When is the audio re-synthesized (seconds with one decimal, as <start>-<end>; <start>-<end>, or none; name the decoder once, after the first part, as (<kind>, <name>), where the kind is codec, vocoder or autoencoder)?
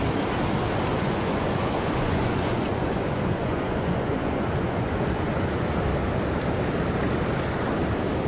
0.9-5.8 (vocoder, Vocos)